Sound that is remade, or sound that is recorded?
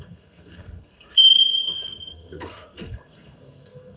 remade